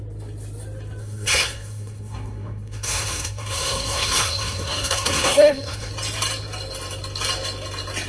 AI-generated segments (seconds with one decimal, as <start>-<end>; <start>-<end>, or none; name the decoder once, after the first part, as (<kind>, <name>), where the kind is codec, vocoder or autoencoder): 1.0-5.9 (codec, SNAC)

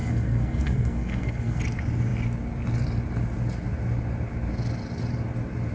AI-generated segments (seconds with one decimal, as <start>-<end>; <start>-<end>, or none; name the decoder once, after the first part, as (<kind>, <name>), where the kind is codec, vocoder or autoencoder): 0.0-1.6 (codec, SNAC)

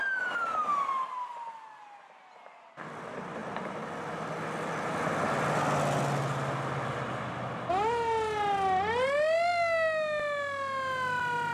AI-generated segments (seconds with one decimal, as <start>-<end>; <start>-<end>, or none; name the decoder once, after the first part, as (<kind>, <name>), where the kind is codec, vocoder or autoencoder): none

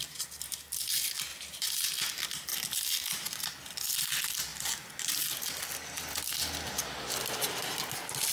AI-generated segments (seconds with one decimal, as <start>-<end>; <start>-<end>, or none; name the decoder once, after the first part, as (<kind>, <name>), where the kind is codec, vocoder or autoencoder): none